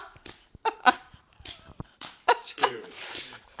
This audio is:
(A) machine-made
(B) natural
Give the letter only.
A